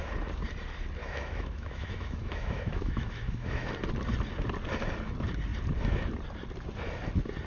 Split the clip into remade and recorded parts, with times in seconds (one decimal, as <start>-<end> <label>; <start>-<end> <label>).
0.0-1.0 recorded; 1.0-3.7 remade; 3.7-7.5 recorded